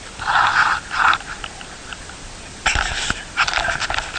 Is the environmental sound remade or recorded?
recorded